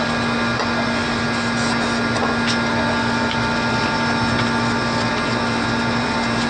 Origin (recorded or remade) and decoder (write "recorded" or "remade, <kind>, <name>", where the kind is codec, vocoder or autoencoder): recorded